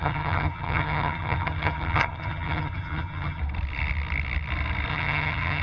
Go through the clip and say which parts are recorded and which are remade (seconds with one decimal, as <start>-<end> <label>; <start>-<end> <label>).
0.0-3.4 remade; 3.4-4.9 recorded; 4.9-5.6 remade